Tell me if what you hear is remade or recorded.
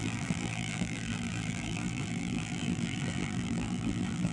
remade